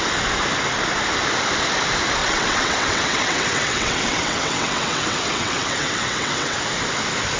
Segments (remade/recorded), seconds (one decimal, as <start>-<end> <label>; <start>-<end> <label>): 0.0-2.2 recorded; 2.2-6.6 remade; 6.6-7.4 recorded